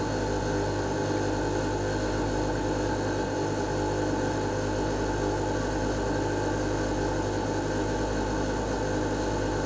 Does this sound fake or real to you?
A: real